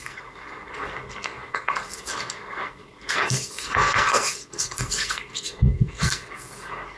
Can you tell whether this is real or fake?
fake